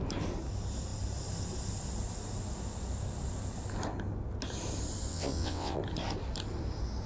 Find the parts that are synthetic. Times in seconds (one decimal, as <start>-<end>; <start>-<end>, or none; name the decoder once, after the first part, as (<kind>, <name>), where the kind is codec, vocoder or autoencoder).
5.1-5.8 (vocoder, WaveNeXt)